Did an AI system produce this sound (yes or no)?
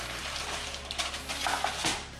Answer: no